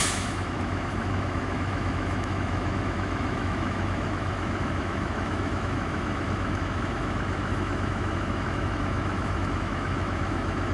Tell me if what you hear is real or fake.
fake